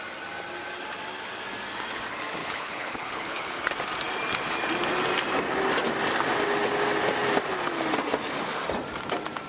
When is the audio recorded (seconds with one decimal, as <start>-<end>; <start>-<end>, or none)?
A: 0.0-2.4; 3.6-9.5